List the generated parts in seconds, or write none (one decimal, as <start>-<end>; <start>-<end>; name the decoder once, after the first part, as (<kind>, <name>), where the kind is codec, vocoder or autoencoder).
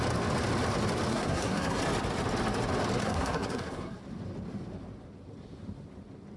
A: 1.1-1.8 (codec, SNAC); 3.0-4.0